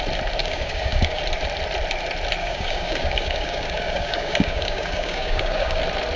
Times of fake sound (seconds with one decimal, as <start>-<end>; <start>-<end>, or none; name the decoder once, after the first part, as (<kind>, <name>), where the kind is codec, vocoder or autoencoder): 0.4-1.2 (codec, DAC); 2.4-5.8